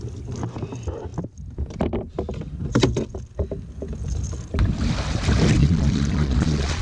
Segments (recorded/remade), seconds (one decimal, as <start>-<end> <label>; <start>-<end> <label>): 0.0-5.6 recorded; 5.6-6.8 remade